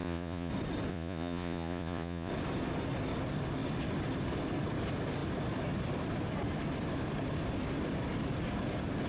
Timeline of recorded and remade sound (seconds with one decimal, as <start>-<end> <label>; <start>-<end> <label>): 0.0-0.5 remade; 0.5-0.9 recorded; 0.9-2.3 remade; 2.3-9.1 recorded

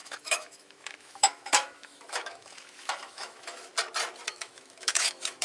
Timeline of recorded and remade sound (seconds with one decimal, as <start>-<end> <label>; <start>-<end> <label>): 0.0-3.7 remade; 3.7-4.3 recorded; 4.3-5.4 remade

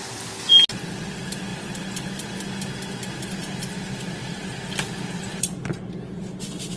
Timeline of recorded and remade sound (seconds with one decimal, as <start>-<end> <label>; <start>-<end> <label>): 0.0-6.8 recorded

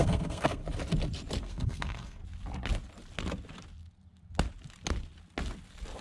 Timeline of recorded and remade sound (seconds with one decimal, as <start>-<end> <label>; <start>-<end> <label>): 0.0-0.6 remade; 0.6-1.4 recorded; 1.4-2.2 remade; 2.2-6.0 recorded